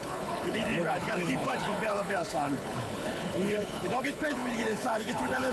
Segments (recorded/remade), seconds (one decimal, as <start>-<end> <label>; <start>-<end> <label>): 0.0-5.5 remade